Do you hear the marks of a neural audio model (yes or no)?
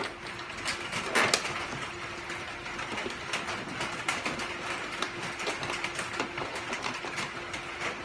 no